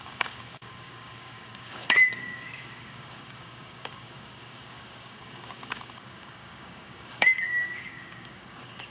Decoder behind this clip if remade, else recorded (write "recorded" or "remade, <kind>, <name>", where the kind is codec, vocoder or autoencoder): remade, codec, DAC